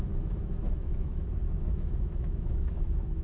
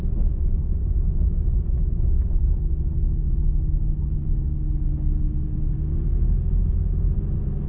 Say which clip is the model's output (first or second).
first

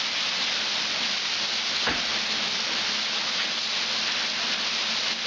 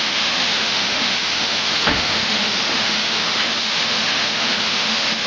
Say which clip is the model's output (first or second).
second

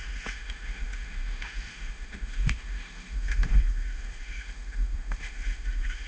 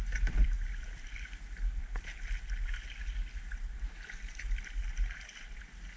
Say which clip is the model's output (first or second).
first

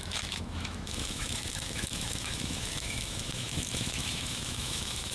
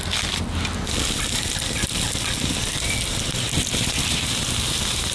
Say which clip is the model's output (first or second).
first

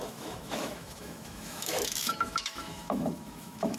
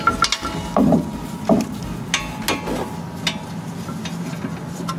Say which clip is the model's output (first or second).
first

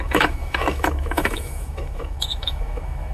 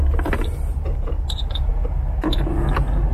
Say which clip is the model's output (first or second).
first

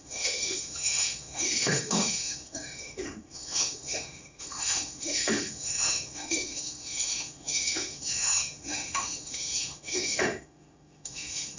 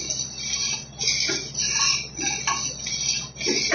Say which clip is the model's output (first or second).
first